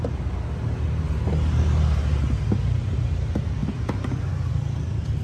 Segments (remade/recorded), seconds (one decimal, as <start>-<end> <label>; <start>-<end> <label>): 0.0-5.2 recorded